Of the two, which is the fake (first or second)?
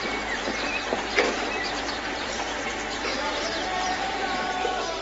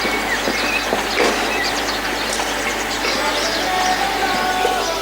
first